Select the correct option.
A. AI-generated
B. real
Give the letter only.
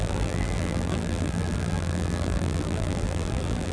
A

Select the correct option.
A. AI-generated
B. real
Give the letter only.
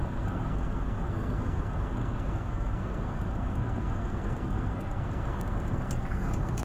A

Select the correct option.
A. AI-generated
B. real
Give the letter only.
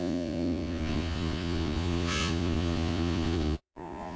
A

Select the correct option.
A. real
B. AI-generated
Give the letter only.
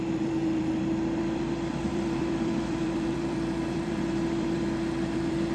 B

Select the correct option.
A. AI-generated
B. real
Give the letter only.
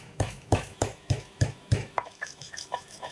A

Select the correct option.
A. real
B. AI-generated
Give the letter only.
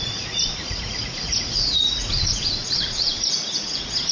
B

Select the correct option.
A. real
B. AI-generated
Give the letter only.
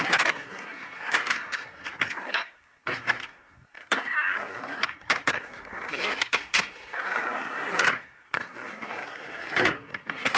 B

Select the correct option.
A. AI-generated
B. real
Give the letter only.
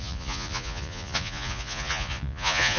A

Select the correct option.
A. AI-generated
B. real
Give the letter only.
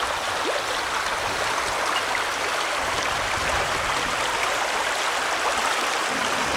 B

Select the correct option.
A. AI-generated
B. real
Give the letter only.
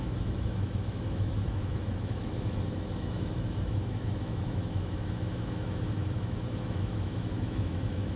A